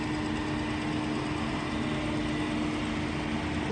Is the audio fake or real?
real